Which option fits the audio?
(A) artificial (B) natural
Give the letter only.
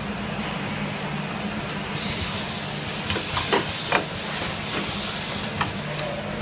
B